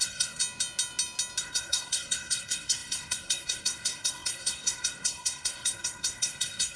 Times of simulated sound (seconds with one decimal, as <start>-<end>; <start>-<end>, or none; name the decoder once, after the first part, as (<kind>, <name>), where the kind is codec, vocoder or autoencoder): 0.0-0.4 (codec, SNAC); 1.4-6.8